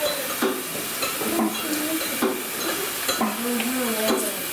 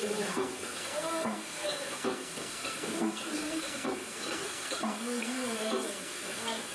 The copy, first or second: second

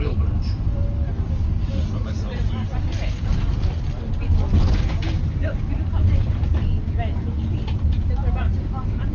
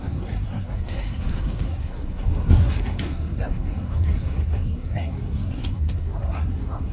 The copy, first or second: second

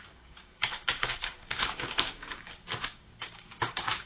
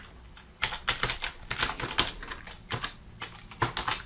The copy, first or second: first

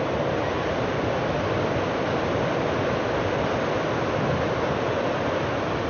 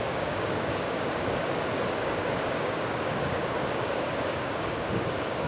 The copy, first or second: second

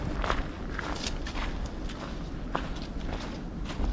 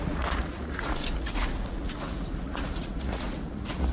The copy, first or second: second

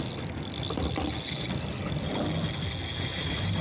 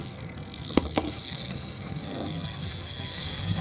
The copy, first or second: second